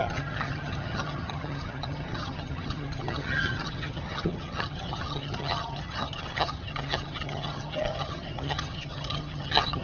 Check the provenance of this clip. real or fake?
fake